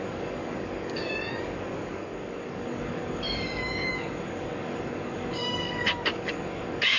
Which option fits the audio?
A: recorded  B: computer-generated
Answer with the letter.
B